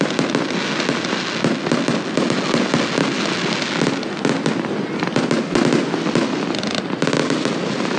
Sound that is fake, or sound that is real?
real